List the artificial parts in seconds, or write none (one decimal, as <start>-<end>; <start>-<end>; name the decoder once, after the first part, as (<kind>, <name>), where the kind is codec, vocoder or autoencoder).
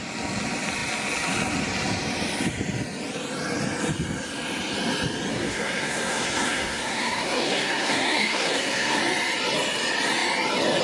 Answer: 5.3-9.0 (codec, SNAC)